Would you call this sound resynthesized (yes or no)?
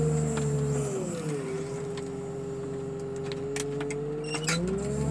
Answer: no